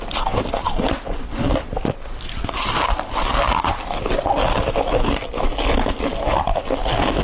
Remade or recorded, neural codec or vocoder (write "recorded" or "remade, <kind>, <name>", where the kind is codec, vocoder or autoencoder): recorded